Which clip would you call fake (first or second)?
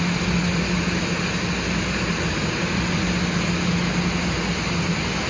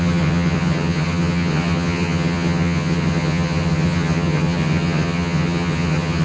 second